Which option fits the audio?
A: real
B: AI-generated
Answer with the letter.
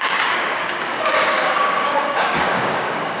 B